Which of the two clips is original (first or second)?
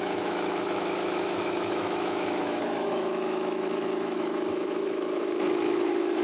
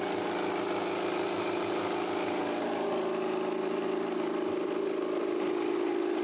second